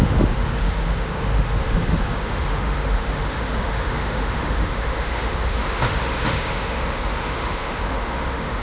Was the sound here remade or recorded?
remade